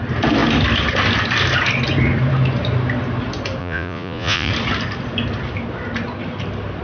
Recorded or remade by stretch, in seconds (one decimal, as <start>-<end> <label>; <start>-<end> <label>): 0.0-3.6 recorded; 3.6-4.5 remade; 4.5-6.8 recorded